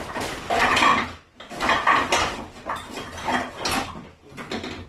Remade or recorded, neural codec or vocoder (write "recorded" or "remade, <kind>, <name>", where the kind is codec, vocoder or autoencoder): recorded